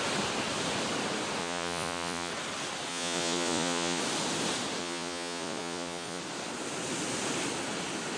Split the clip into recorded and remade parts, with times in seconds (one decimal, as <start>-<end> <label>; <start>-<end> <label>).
0.0-1.4 recorded; 1.4-2.3 remade; 2.3-2.9 recorded; 2.9-4.0 remade; 4.0-4.8 recorded; 4.8-6.2 remade; 6.2-8.2 recorded